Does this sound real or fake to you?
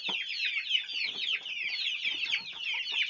real